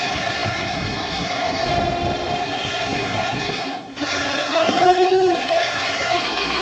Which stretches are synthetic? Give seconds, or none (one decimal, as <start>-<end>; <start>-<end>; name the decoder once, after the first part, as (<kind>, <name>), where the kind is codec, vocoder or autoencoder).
0.0-1.7 (codec, SNAC); 2.4-6.6